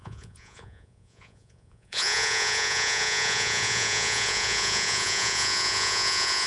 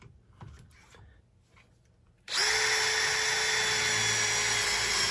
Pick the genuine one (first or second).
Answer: second